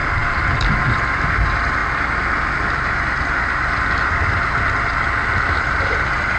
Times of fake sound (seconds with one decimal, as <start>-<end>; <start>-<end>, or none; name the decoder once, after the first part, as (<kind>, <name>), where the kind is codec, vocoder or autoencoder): 0.7-1.8 (vocoder, BigVGAN v2); 5.6-6.4